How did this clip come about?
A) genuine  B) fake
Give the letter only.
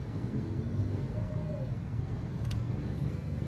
B